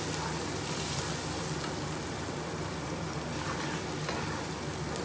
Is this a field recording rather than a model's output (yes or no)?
yes